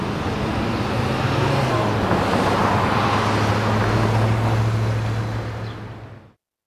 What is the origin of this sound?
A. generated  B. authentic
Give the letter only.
B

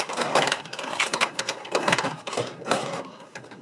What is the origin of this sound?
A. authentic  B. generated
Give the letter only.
B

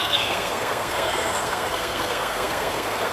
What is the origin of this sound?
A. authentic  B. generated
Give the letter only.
B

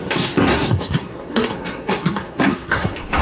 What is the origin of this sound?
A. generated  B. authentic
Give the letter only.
A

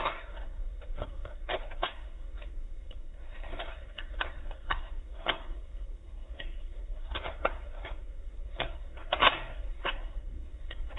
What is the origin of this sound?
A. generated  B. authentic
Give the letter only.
A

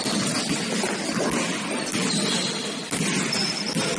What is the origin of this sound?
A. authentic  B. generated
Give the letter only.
A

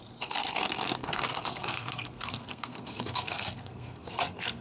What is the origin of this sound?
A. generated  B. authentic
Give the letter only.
A